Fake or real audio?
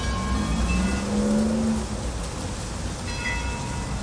real